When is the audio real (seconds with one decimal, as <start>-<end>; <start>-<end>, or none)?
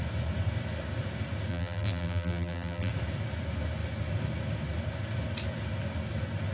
0.0-1.5; 2.9-6.5